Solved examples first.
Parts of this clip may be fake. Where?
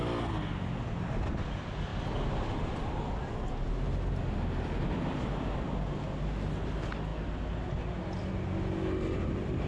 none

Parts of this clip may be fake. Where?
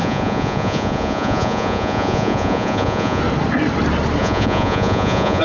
0.0-3.2 (vocoder, Vocos); 4.2-5.4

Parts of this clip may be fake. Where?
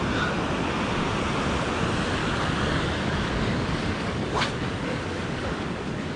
2.2-6.2 (codec, DAC)